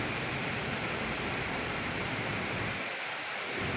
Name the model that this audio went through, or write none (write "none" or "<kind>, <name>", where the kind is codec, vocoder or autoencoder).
vocoder, BigVGAN v2